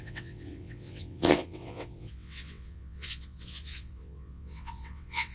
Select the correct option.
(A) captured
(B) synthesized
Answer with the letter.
B